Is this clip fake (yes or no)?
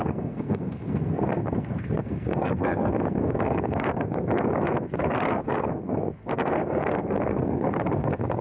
yes